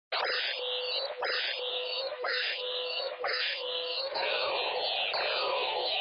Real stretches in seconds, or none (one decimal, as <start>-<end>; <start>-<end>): 0.0-1.7; 4.5-5.4